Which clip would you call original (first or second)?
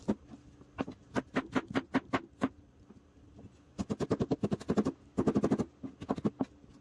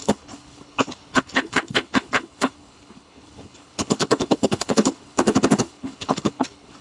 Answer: first